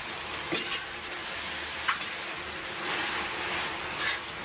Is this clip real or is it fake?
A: real